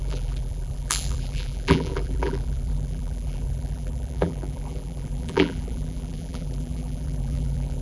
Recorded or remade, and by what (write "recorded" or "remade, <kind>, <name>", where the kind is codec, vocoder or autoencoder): remade, vocoder, BigVGAN v2